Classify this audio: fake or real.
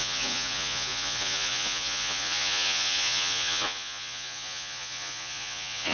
fake